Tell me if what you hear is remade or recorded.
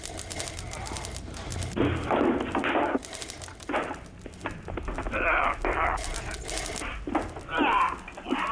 recorded